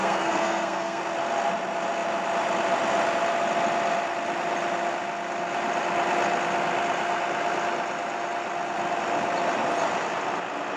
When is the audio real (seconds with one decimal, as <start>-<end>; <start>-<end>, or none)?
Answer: 1.0-10.8